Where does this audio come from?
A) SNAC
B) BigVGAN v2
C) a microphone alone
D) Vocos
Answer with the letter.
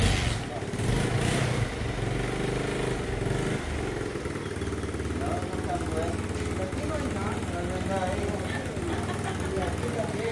C